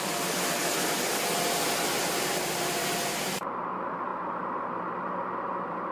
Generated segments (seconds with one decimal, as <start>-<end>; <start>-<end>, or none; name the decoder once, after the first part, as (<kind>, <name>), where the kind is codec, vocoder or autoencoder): 0.0-0.7 (vocoder, BigVGAN v2); 2.1-5.9